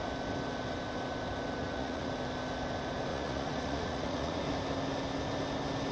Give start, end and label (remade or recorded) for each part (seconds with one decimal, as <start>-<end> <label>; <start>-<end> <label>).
0.0-1.6 recorded; 1.6-2.1 remade; 2.1-3.1 recorded; 3.1-4.4 remade; 4.4-5.9 recorded